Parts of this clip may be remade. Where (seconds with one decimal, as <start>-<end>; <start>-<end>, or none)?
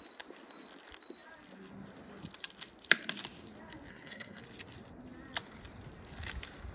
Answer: 3.9-4.4